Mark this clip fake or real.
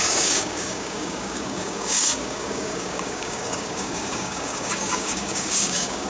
fake